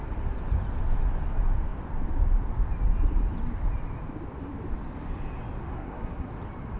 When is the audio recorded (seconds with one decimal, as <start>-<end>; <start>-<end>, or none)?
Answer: 0.0-5.7; 6.3-6.8